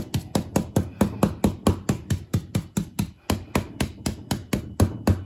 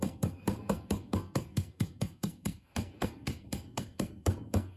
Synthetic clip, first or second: second